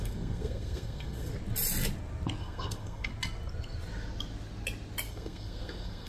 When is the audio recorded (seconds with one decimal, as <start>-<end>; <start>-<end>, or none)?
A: 1.3-2.4; 3.1-5.1

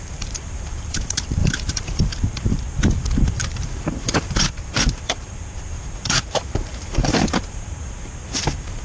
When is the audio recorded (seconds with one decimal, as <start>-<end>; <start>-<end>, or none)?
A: none